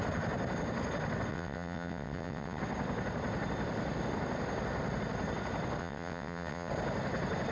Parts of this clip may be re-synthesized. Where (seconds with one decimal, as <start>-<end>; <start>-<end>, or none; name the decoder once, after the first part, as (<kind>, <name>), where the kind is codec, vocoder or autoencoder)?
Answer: 1.3-2.6 (vocoder, WaveNeXt); 5.8-6.7